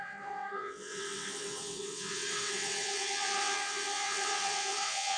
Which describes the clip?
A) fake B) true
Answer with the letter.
A